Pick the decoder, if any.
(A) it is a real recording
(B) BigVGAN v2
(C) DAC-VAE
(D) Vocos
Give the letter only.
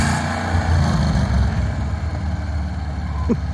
A